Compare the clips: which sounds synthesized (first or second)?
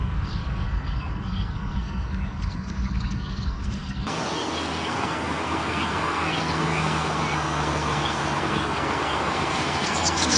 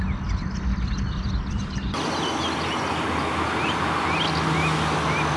first